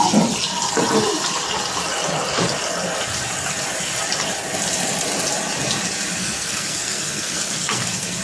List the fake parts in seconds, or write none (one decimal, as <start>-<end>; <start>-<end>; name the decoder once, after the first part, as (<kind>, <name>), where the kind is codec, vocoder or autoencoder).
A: 6.2-8.2 (codec, SNAC)